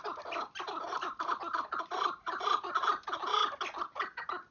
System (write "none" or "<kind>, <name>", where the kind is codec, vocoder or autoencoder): none